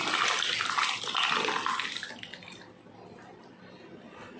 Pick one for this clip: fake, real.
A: real